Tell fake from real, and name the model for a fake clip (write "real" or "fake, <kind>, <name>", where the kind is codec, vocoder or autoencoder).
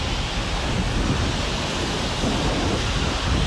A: real